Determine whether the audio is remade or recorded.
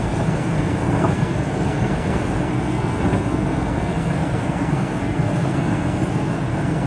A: remade